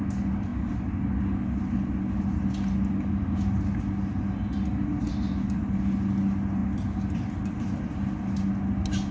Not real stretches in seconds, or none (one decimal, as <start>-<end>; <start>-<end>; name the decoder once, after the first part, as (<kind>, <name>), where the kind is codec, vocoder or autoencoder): none